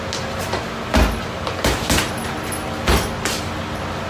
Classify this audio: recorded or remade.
recorded